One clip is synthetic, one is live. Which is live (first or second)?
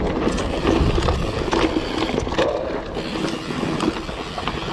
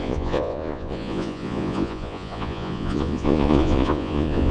first